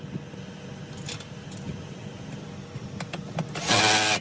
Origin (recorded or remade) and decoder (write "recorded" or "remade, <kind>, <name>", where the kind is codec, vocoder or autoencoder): recorded